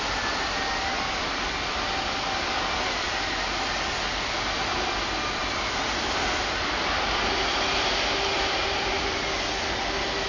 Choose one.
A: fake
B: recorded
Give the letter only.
B